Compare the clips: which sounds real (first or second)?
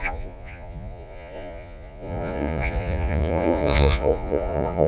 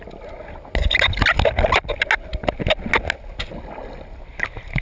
second